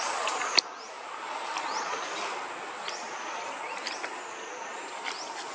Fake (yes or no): no